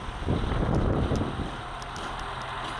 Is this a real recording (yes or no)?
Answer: yes